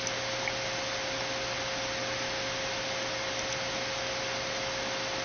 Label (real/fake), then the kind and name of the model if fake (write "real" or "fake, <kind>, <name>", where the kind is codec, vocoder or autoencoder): real